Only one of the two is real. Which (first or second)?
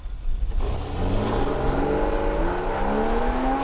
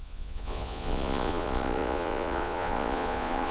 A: first